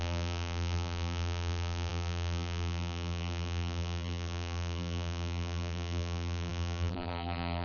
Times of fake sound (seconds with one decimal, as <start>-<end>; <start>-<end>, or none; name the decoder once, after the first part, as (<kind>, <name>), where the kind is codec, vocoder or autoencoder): 0.0-7.6 (vocoder, BigVGAN v2)